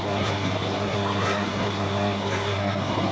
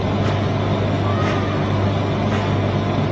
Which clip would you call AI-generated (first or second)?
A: first